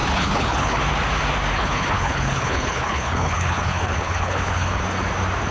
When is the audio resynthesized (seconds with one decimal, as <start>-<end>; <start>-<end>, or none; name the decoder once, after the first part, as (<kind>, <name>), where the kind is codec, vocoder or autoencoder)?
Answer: 0.0-0.8 (codec, HILCodec); 1.5-4.8